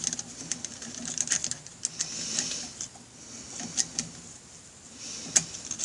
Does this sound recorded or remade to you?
recorded